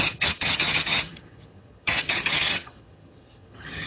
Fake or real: fake